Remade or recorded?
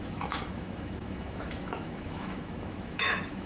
remade